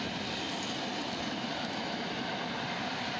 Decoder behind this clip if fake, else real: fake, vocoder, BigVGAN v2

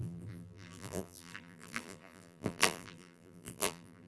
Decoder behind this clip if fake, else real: fake, vocoder, BigVGAN v2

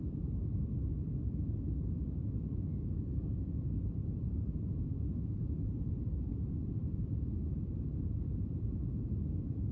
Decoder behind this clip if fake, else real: fake, vocoder, BigVGAN v2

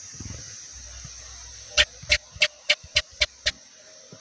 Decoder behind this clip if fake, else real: real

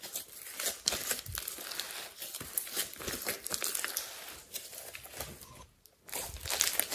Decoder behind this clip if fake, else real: real